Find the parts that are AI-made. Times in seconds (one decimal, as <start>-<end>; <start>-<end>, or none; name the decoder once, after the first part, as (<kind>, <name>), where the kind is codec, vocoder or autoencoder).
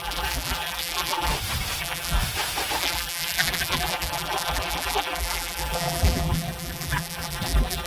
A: 0.0-1.3 (vocoder, BigVGAN v2); 1.8-2.2; 2.8-7.9